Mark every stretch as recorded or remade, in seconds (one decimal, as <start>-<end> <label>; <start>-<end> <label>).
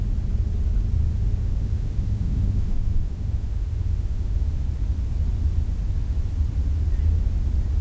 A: 0.0-1.4 recorded; 1.4-4.6 remade; 4.6-7.8 recorded